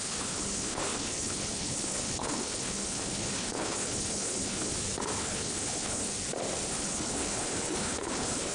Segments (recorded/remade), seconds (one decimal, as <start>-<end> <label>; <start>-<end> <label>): 0.0-4.7 remade; 4.7-5.2 recorded; 5.2-6.1 remade; 6.1-6.7 recorded; 6.7-8.5 remade